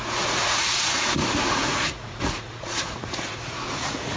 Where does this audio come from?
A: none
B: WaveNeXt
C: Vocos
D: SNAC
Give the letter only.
C